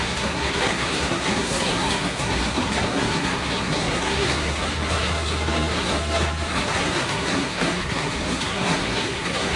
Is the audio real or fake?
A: fake